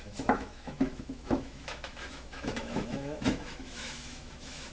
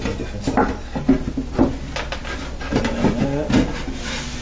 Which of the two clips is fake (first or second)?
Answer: first